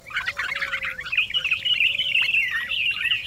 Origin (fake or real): real